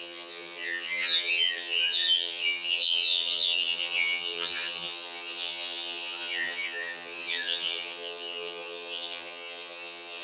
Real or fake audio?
fake